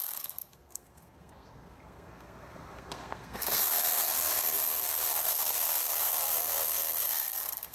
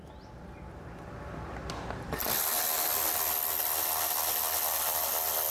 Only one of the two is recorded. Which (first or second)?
second